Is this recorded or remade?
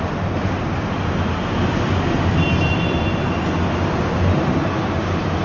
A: recorded